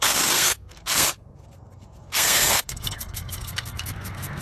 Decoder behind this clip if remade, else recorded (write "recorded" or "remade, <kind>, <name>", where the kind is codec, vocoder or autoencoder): remade, codec, SNAC